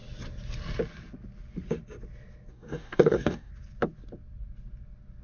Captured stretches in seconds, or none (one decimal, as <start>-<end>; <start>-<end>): 0.0-2.5; 3.5-5.2